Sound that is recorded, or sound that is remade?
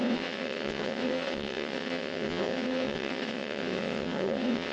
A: remade